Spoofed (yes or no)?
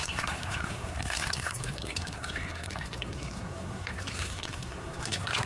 yes